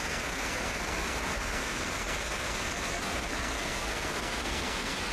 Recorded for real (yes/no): no